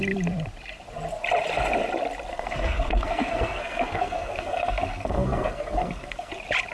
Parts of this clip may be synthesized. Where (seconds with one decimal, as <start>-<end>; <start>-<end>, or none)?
2.3-6.3